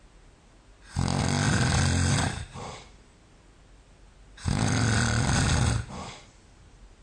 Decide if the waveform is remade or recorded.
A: recorded